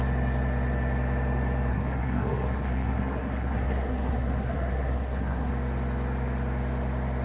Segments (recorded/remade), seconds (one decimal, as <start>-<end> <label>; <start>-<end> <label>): 0.0-1.7 recorded; 1.7-5.5 remade; 5.5-7.2 recorded